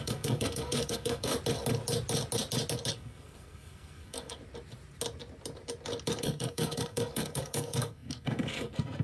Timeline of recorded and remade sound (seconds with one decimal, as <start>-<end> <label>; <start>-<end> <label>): 0.0-1.3 remade; 1.3-2.9 recorded; 2.9-4.4 remade; 4.4-6.2 recorded; 6.2-9.0 remade

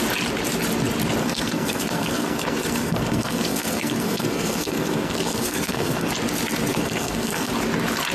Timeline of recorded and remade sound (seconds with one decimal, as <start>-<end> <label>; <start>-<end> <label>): 0.0-1.2 recorded; 1.2-6.1 remade; 6.1-6.7 recorded; 6.7-7.5 remade; 7.5-8.1 recorded

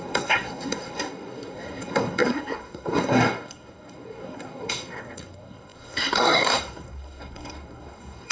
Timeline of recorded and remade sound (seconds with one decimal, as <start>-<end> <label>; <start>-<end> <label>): 0.0-8.3 remade

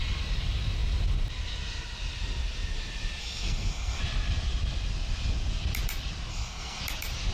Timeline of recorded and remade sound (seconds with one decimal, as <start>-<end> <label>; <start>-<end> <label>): 0.0-3.2 recorded; 3.2-4.0 remade; 4.0-6.3 recorded; 6.3-6.8 remade; 6.8-7.3 recorded

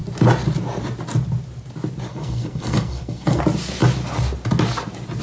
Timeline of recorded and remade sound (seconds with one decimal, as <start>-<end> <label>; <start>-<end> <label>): 0.0-2.1 recorded; 2.1-3.4 remade; 3.4-5.2 recorded